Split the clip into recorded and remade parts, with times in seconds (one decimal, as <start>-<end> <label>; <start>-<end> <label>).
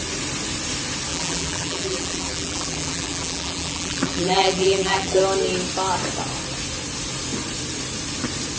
0.0-1.1 recorded; 1.1-5.2 remade; 5.2-8.6 recorded